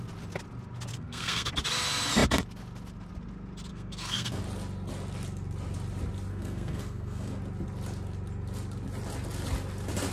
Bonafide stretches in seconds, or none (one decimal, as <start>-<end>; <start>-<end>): 0.0-0.9; 1.5-3.7; 4.4-6.3; 7.4-10.1